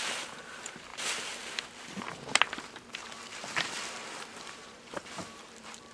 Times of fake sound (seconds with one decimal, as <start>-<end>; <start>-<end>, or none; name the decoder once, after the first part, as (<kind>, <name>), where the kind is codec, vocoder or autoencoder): 0.0-0.9 (vocoder, BigVGAN v2); 4.4-5.9